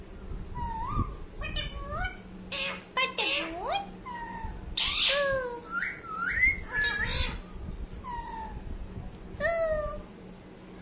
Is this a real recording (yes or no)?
yes